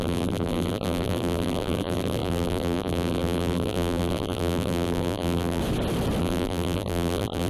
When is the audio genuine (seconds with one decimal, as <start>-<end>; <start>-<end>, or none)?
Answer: 5.6-6.2